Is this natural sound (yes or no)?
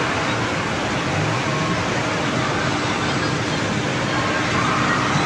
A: yes